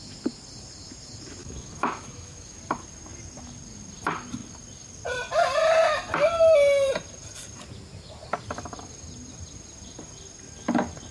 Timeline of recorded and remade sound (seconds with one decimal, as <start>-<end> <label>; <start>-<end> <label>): 0.0-1.4 recorded; 1.4-2.6 remade; 2.6-11.1 recorded